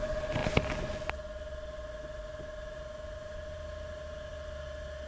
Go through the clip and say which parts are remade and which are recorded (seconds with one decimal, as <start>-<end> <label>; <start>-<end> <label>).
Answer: 0.0-5.1 recorded